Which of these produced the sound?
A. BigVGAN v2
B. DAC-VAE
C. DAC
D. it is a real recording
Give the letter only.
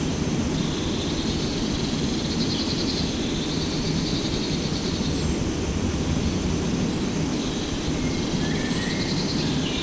D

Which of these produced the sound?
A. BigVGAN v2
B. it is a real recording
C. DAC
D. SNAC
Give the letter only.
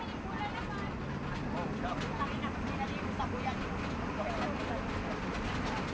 B